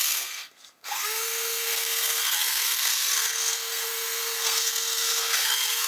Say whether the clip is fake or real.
fake